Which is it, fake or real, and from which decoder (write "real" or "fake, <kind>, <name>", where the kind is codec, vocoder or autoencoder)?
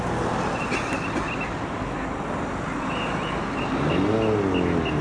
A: real